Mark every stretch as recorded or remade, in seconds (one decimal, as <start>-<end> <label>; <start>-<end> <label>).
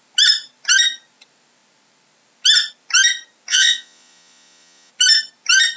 0.0-3.5 recorded; 3.5-4.9 remade; 4.9-5.8 recorded